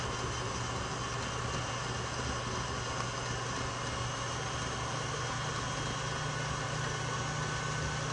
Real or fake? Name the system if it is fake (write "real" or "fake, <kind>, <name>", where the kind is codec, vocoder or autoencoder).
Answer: real